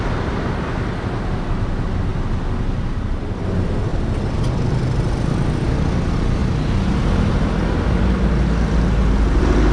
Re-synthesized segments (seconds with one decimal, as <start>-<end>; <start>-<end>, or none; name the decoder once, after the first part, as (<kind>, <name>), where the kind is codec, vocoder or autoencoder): none